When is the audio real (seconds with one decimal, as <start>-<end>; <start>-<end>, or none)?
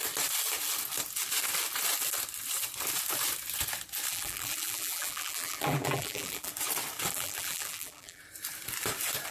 0.0-4.1; 6.5-7.1; 8.2-9.3